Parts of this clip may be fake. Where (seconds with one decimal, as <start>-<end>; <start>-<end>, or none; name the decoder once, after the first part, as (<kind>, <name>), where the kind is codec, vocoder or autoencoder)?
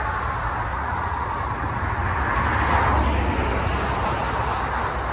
0.7-1.4 (vocoder, Vocos)